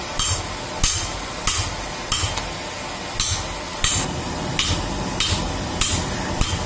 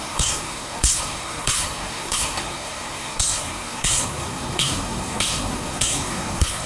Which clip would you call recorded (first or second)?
first